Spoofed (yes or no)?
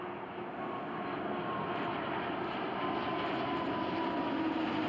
no